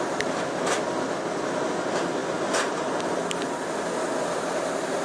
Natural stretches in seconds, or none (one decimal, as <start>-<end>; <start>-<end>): 0.0-5.0